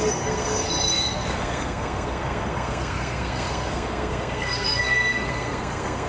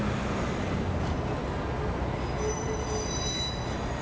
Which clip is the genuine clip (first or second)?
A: second